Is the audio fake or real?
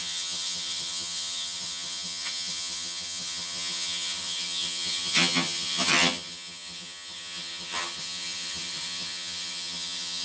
fake